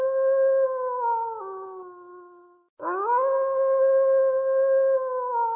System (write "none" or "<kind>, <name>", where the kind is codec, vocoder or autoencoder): none